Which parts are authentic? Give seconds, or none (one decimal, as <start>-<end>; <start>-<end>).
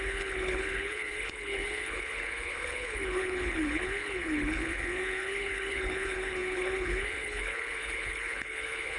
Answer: none